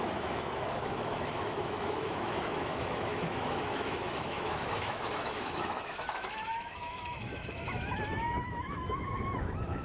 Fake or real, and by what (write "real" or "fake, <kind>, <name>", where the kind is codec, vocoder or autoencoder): fake, autoencoder, DAC-VAE